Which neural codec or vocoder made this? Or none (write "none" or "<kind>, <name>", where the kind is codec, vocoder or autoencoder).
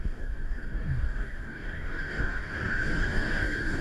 codec, DAC